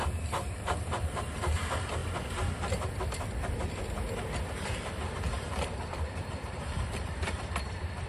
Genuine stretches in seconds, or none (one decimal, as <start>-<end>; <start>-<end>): 2.0-4.5